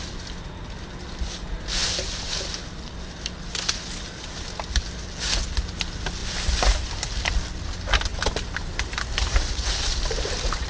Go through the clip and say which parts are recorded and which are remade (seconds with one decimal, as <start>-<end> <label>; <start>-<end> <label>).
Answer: 0.0-10.7 recorded